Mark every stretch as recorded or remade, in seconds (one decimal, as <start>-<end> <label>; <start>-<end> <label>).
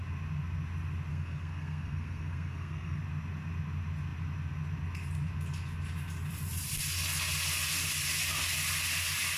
0.0-1.1 recorded; 1.1-3.0 remade; 3.0-9.4 recorded